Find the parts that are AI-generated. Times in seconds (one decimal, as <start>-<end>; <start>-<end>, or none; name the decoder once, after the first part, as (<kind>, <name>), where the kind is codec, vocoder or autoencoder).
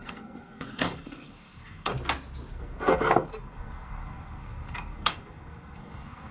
0.0-1.9 (codec, SNAC); 2.5-6.3